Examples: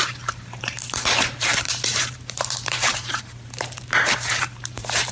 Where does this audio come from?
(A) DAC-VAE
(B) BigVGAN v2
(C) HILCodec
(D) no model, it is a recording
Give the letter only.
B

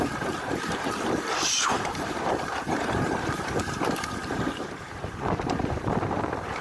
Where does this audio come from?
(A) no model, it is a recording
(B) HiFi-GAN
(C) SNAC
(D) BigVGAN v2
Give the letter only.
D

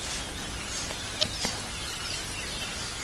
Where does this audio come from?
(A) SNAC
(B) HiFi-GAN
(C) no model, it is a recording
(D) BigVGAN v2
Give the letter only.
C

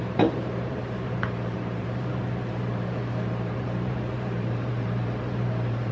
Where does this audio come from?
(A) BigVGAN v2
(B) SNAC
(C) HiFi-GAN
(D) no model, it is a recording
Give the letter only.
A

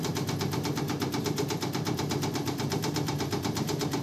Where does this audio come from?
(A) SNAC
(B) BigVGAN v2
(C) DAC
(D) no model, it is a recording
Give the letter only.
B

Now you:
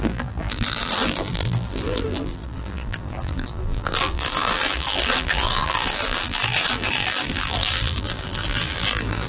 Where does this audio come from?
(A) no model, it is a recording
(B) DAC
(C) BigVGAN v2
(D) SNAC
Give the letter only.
C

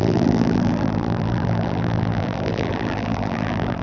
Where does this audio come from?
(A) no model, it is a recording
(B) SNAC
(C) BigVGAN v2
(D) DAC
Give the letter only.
C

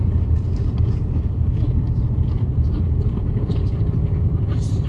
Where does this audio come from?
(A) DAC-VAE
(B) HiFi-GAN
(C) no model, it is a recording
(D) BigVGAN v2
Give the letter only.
D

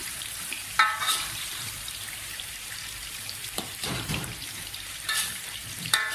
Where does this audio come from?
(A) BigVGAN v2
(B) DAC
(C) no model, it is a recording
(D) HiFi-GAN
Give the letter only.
A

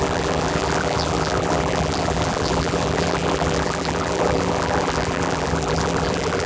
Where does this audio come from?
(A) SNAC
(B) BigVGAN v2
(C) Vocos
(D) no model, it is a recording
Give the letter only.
B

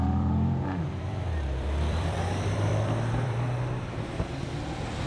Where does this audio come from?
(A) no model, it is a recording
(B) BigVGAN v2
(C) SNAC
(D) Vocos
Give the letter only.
B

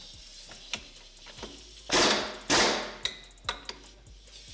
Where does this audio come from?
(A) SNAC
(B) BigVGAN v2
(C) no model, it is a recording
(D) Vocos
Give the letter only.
C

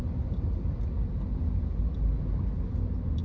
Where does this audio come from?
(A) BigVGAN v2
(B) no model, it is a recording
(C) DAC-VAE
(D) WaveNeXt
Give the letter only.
B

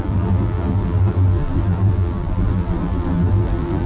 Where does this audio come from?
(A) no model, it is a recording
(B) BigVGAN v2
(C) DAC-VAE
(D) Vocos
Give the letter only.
B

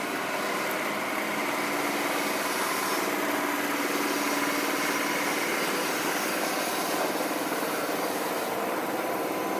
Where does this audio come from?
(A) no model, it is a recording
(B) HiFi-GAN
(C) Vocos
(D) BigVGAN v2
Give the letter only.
A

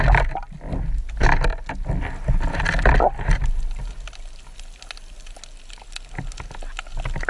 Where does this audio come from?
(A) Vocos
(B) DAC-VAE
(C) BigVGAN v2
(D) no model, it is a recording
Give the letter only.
D